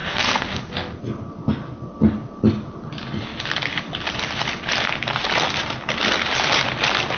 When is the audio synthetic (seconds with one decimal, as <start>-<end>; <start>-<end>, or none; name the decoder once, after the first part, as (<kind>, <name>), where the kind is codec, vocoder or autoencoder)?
0.0-1.0 (codec, SNAC)